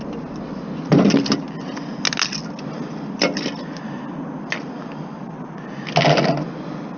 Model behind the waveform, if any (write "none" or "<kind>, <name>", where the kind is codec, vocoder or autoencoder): none